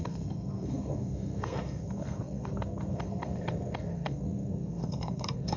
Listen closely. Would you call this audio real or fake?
fake